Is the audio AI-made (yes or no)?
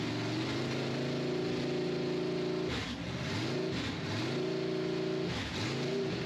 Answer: no